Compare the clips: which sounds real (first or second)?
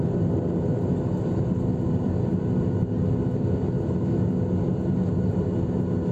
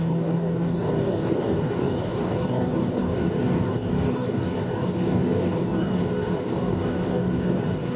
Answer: first